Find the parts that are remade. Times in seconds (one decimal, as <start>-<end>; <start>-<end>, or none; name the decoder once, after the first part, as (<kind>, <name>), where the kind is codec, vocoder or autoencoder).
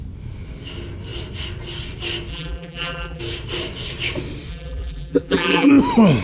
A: 2.3-3.2 (vocoder, BigVGAN v2); 4.5-5.7